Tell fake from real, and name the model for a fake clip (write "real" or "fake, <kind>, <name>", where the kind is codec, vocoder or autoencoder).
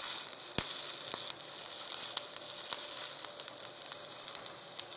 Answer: real